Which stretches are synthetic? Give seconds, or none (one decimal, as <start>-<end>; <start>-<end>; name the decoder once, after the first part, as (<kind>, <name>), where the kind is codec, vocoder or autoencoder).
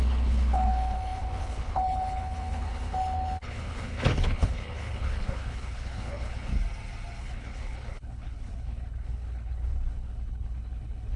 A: 0.0-6.5 (codec, HILCodec); 7.2-11.2